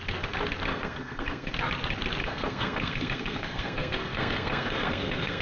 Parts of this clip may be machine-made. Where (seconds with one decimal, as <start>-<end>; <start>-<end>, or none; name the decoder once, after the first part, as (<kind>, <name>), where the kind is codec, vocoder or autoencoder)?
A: 0.7-1.5 (codec, SNAC); 2.2-5.4